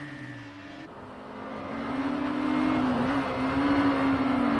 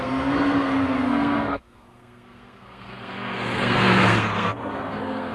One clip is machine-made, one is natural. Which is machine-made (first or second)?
second